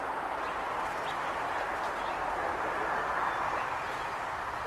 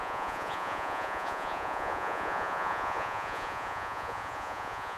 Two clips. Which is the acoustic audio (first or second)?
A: first